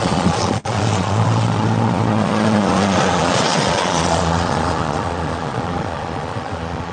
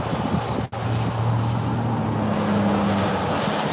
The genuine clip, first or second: second